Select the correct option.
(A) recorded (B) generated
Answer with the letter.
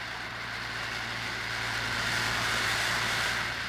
A